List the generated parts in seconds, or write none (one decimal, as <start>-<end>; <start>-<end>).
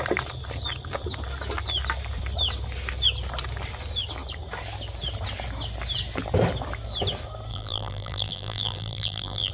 7.5-9.5